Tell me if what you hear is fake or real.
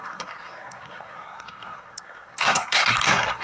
fake